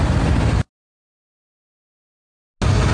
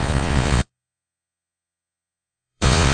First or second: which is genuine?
first